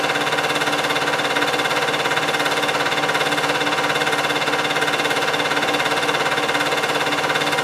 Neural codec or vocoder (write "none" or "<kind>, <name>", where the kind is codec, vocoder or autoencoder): none